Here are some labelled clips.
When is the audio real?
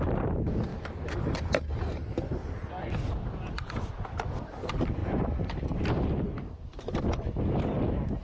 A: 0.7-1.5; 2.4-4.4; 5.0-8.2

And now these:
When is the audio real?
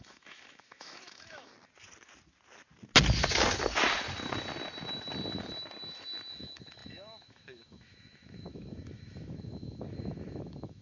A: 1.5-6.3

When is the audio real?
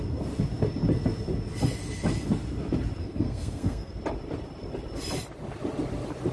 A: 0.0-3.0; 3.9-6.3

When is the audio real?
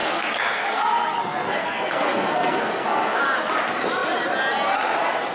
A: 3.2-5.3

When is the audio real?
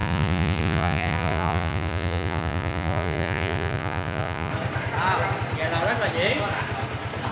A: 4.5-7.3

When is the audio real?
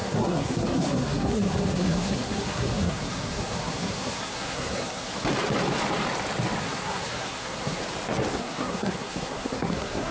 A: 5.1-6.6; 7.8-8.4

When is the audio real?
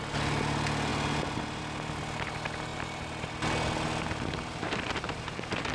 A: 0.0-0.9; 1.6-2.7; 3.3-4.6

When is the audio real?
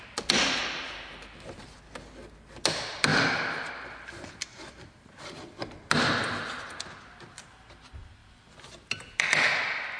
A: 0.0-10.0